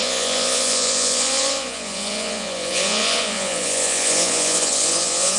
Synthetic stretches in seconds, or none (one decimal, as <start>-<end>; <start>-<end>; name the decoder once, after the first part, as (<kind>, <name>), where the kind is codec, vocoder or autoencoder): 0.0-5.4 (vocoder, Vocos)